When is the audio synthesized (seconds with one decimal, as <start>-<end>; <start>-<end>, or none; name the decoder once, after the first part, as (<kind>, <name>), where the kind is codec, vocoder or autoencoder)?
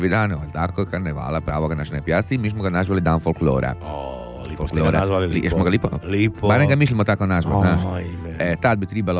none